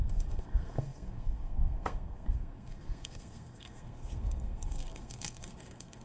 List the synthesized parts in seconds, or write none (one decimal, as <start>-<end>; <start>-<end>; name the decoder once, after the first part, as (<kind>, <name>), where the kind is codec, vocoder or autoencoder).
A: 0.0-6.0 (codec, SNAC)